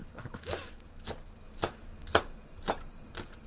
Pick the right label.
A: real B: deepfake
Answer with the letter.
A